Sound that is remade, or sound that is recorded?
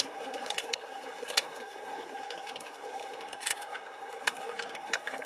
remade